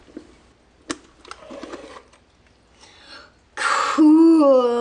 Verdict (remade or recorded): recorded